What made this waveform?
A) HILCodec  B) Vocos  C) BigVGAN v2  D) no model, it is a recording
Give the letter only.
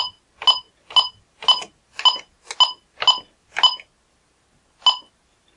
D